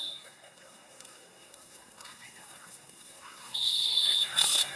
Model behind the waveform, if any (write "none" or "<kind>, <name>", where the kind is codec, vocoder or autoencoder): codec, SNAC